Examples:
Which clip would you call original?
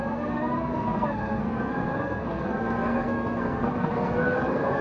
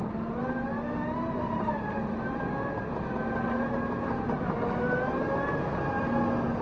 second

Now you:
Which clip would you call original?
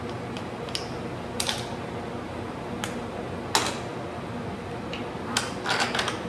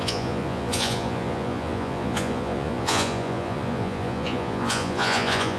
first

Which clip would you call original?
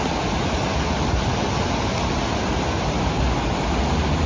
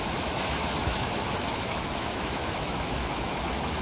first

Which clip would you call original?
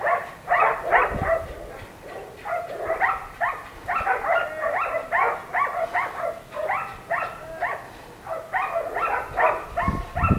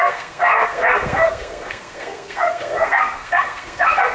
first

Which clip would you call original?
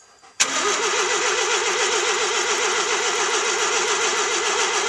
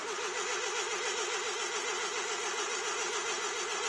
second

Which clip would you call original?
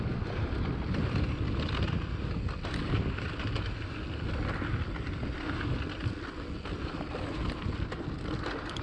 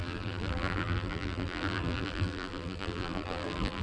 first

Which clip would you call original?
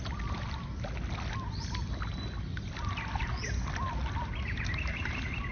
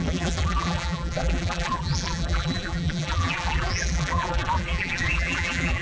first